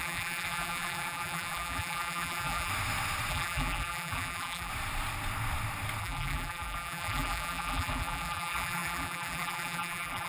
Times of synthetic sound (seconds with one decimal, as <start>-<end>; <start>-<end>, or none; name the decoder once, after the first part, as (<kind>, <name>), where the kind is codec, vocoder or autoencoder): 0.0-2.7 (vocoder, BigVGAN v2); 3.3-4.7; 6.0-10.3